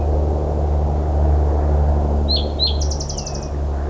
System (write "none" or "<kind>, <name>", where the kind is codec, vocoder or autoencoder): none